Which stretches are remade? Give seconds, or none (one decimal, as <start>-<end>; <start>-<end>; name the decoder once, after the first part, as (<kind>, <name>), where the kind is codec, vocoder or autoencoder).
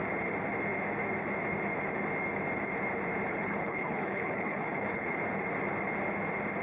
3.3-5.2 (codec, HILCodec)